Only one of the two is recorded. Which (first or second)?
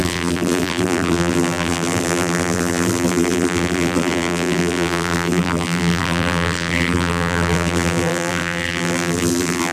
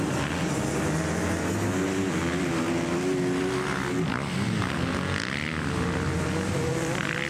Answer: second